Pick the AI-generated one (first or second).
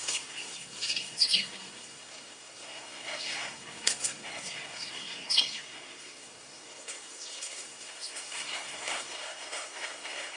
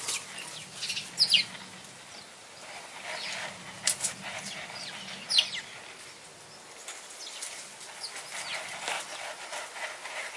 first